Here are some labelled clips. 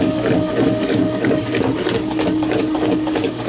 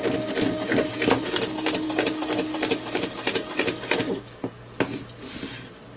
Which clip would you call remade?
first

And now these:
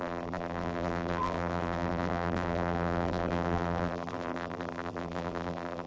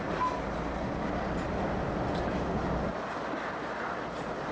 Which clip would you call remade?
first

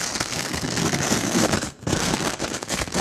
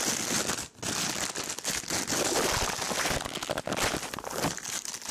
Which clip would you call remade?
first